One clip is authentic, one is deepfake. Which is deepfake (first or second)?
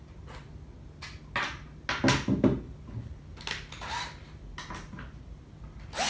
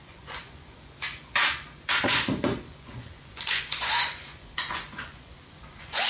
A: second